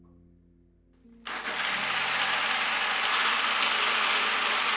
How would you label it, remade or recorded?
recorded